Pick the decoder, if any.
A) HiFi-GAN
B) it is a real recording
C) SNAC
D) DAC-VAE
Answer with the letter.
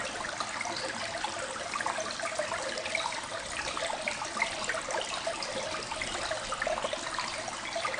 B